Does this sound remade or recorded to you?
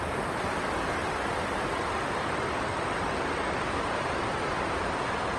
recorded